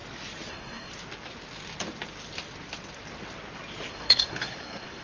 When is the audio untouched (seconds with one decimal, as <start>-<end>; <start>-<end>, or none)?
0.0-0.5; 0.9-3.9